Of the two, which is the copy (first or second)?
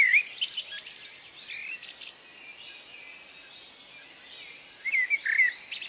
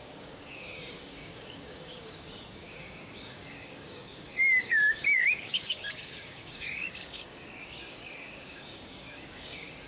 second